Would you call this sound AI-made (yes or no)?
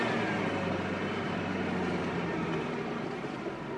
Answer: no